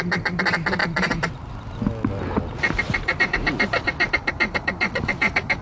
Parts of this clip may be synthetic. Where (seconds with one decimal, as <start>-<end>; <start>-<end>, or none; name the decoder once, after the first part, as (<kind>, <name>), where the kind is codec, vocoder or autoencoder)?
none